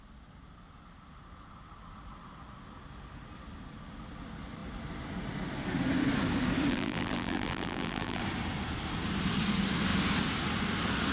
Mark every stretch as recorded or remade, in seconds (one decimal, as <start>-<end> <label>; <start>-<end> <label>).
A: 0.0-6.7 recorded; 6.7-8.2 remade; 8.2-11.1 recorded